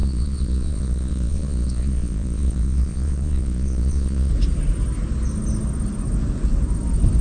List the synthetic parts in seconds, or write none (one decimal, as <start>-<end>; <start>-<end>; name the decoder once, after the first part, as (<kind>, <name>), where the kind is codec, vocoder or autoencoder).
0.0-4.3 (vocoder, Vocos)